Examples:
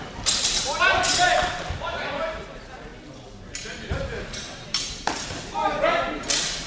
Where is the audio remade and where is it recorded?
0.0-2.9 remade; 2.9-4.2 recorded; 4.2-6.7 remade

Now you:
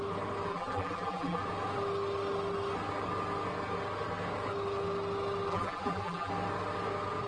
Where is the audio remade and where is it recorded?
0.0-0.5 recorded; 0.5-1.4 remade; 1.4-5.5 recorded; 5.5-6.3 remade; 6.3-7.3 recorded

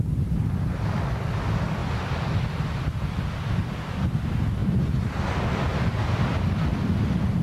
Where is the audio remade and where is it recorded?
0.0-4.6 recorded; 4.6-5.2 remade; 5.2-5.7 recorded; 5.7-6.3 remade; 6.3-7.4 recorded

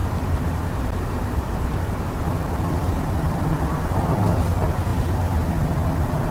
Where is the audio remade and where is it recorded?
0.0-3.8 remade; 3.8-4.9 recorded; 4.9-5.5 remade; 5.5-6.3 recorded

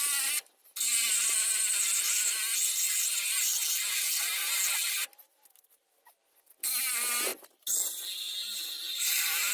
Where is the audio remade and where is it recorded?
0.0-9.5 recorded